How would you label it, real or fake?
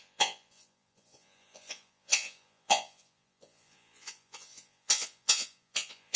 fake